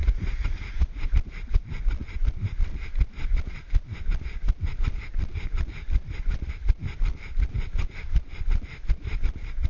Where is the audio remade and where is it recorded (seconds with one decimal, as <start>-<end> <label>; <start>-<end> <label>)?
0.0-1.0 remade; 1.0-9.7 recorded